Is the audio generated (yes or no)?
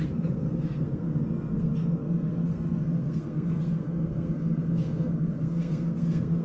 yes